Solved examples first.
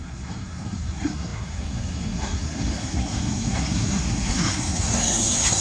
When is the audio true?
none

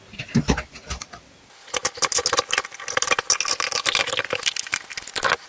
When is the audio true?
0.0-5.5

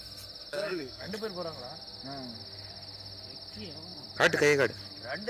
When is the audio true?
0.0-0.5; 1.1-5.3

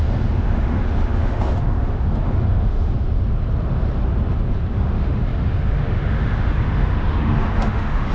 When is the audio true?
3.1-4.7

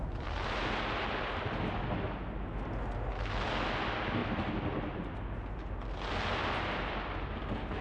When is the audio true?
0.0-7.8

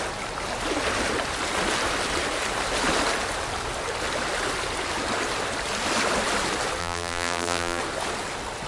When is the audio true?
0.0-6.8; 7.8-8.7